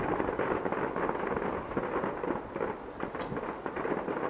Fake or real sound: real